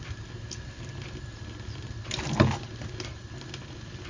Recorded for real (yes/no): yes